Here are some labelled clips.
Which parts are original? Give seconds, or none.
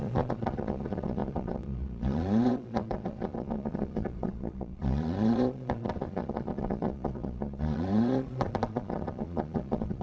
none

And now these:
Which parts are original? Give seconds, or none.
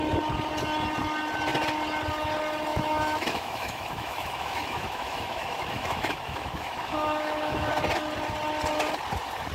0.0-2.7; 7.7-9.5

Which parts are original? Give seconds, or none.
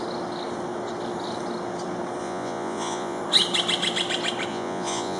0.0-2.2; 3.2-4.5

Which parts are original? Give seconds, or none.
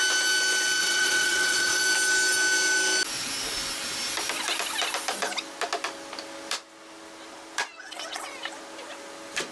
0.0-0.8; 1.8-7.7; 8.4-9.5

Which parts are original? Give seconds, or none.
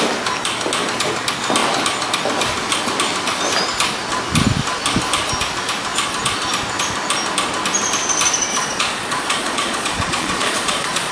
0.0-8.5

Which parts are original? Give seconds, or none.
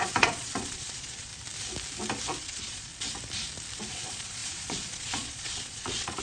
1.3-2.4; 2.9-3.9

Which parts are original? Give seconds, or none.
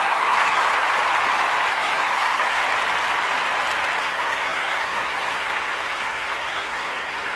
0.7-1.7; 2.6-4.0